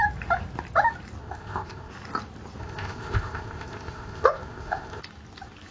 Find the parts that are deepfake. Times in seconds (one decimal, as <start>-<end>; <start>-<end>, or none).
1.2-1.9; 2.6-5.0